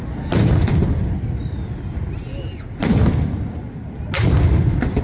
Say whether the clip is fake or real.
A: real